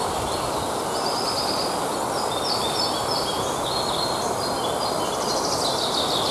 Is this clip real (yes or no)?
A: yes